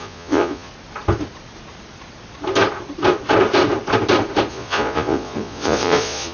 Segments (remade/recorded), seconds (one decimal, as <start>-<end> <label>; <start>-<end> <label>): 0.0-0.7 remade; 0.7-4.5 recorded; 4.5-6.3 remade